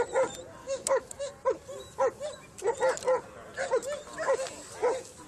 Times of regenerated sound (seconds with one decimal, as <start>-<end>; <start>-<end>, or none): 0.6-1.3